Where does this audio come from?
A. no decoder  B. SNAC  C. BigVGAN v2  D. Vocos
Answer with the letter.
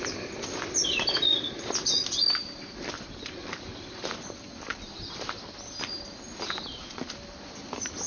C